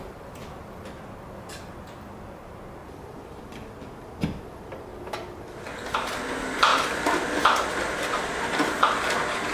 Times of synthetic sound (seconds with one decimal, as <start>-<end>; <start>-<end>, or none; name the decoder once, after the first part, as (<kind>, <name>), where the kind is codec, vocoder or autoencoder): 2.8-3.4 (vocoder, BigVGAN v2); 4.9-5.4; 6.7-9.1